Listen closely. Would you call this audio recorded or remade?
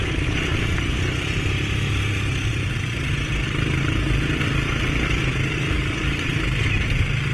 recorded